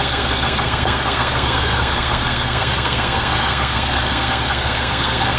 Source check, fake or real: fake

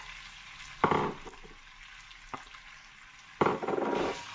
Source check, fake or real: real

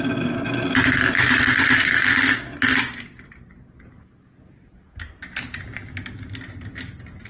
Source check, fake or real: real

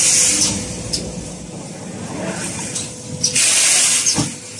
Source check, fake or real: real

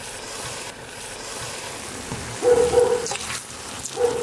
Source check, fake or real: real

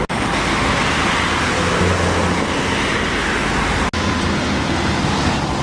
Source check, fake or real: real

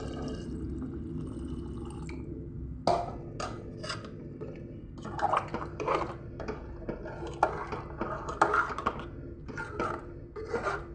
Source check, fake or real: real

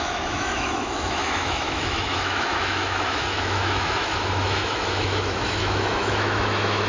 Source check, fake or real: fake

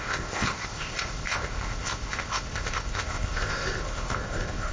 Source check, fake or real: fake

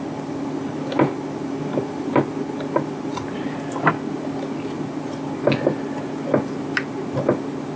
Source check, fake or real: real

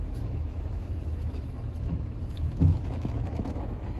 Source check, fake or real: fake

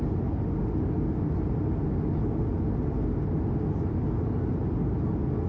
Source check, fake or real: real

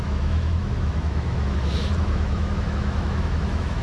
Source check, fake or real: fake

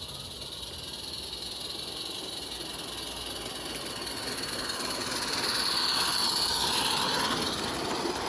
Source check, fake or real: real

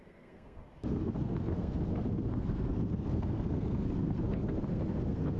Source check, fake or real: fake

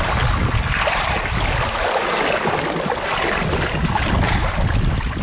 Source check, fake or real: real